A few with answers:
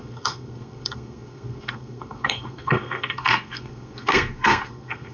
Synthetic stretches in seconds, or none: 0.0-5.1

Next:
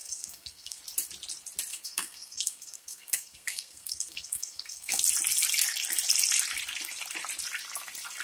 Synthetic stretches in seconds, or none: 0.0-0.8; 1.7-5.0

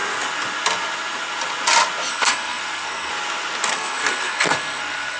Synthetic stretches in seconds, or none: 2.1-3.1; 3.7-5.2

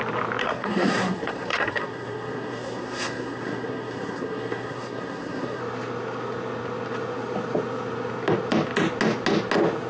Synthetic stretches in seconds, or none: 0.4-5.6

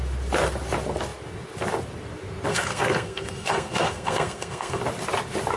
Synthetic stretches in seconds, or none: 2.5-4.8

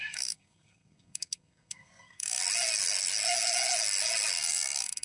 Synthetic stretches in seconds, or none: 0.0-2.4; 4.3-5.0

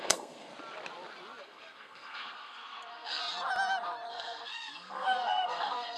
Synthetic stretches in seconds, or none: 0.0-0.5; 1.4-3.2; 4.1-6.0